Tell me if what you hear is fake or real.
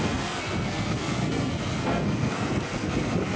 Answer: fake